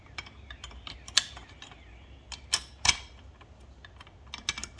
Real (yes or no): yes